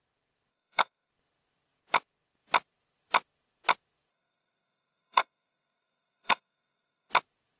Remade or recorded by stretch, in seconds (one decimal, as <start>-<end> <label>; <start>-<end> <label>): 0.0-0.5 recorded; 0.5-1.1 remade; 1.1-4.1 recorded; 4.1-7.1 remade; 7.1-7.6 recorded